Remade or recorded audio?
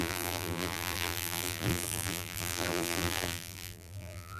remade